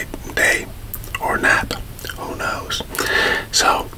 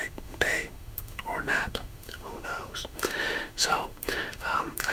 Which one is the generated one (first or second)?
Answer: second